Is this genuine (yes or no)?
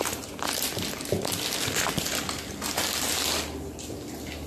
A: yes